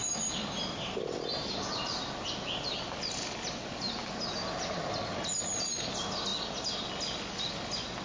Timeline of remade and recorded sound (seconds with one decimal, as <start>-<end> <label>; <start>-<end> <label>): 0.0-8.0 recorded

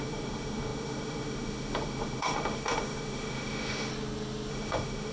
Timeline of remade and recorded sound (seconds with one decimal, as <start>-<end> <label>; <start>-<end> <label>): 0.0-3.9 remade; 3.9-4.5 recorded; 4.5-5.1 remade

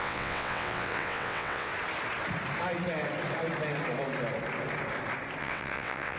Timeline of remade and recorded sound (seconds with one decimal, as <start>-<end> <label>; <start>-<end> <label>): 0.0-1.7 remade; 1.7-5.4 recorded; 5.4-6.2 remade

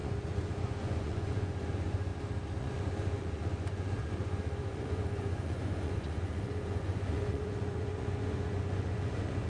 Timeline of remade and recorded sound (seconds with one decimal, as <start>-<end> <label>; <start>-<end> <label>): 0.0-2.1 remade; 2.1-2.6 recorded; 2.6-9.5 remade

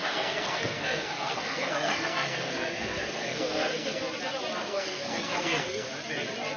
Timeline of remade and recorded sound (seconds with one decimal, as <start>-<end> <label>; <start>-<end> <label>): 0.0-4.0 remade; 4.0-4.6 recorded; 4.6-5.9 remade; 5.9-6.6 recorded

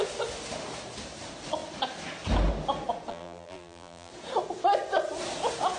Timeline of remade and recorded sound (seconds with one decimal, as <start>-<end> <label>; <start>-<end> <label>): 0.0-3.1 recorded; 3.1-4.1 remade; 4.1-5.8 recorded

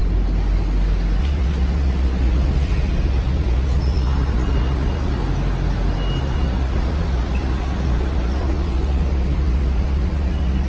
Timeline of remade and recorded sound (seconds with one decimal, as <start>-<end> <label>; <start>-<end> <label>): 0.0-1.2 recorded; 1.2-5.2 remade; 5.2-6.2 recorded; 6.2-10.7 remade

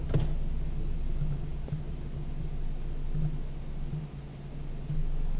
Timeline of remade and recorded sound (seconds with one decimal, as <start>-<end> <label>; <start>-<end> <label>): 0.0-5.4 recorded